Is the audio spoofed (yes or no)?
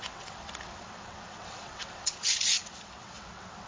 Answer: yes